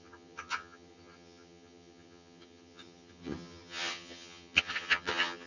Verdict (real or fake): fake